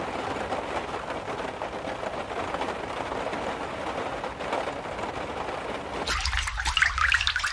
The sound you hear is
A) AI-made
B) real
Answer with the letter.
B